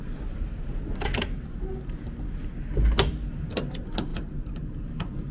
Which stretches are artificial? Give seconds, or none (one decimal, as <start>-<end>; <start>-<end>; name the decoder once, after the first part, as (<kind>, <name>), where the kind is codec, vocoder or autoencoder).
none